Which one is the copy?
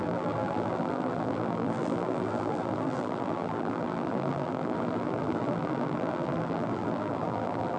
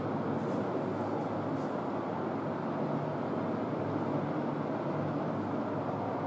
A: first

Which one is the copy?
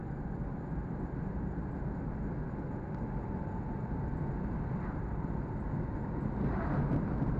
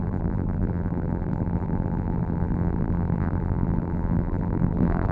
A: second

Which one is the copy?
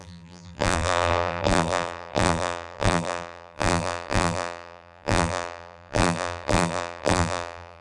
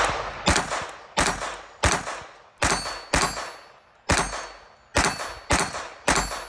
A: first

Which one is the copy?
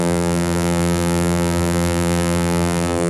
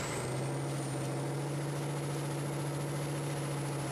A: first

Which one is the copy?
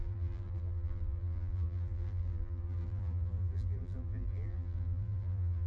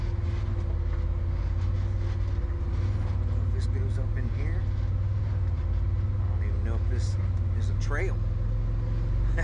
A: first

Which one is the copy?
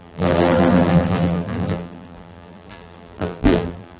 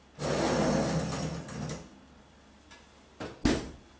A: first